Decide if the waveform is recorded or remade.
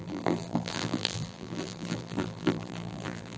remade